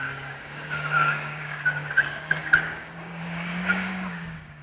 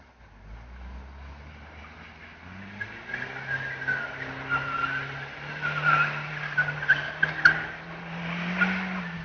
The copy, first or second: first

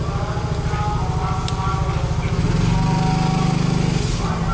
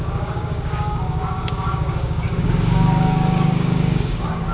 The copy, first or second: second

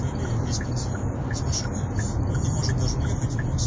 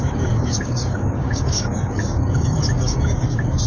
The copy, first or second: second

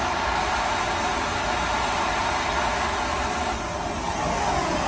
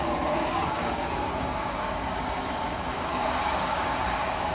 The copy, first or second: second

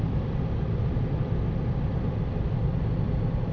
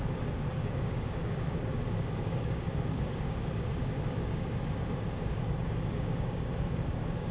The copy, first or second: second